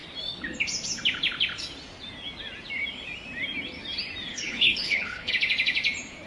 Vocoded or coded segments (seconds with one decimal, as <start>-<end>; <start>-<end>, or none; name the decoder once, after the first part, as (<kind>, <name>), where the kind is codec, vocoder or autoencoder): 4.3-5.3 (codec, HILCodec)